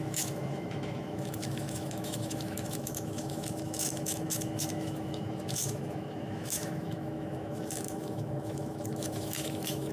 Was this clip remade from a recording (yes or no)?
yes